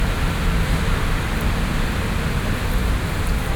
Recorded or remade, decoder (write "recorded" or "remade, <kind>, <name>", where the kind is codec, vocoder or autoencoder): recorded